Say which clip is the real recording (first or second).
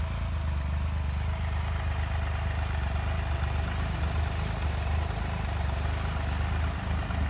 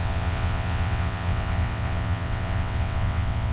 first